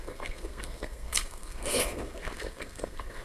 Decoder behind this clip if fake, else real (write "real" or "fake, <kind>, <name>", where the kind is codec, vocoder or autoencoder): fake, codec, SNAC